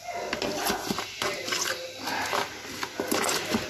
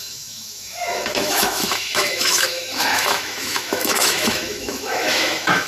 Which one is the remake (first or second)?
second